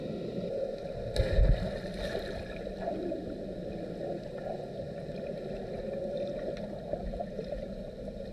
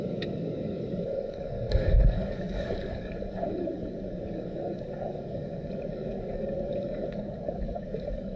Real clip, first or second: first